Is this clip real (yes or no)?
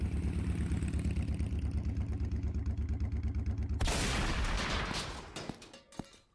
yes